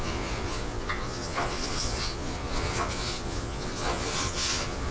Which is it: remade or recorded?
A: remade